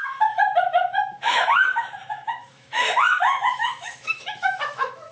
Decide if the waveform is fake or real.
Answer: fake